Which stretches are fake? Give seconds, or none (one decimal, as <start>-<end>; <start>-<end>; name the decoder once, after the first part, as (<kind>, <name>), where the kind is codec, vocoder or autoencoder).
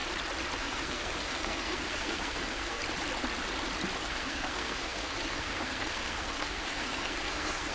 0.6-2.8 (codec, SNAC); 4.1-7.7